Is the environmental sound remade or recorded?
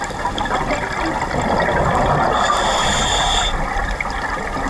recorded